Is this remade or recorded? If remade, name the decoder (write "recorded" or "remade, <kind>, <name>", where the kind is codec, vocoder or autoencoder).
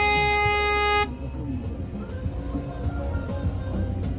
recorded